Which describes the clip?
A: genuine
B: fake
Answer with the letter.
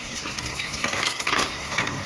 B